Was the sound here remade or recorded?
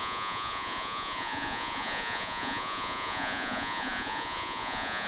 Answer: remade